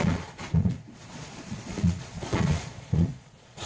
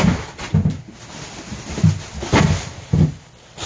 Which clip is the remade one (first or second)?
first